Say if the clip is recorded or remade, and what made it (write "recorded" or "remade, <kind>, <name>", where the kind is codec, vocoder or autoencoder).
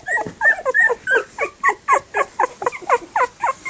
remade, vocoder, BigVGAN v2